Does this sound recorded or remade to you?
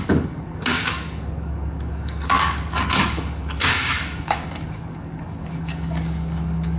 remade